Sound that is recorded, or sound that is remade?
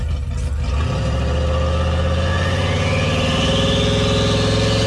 recorded